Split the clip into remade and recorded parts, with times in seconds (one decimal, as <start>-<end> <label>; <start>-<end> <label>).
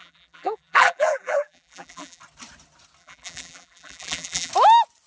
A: 0.0-2.2 remade; 2.2-3.0 recorded; 3.0-4.5 remade; 4.5-5.1 recorded